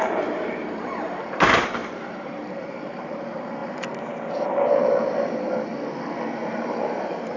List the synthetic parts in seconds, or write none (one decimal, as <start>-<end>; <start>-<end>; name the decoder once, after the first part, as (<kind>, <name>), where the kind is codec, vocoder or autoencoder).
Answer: 0.0-5.7 (vocoder, BigVGAN v2); 6.5-7.4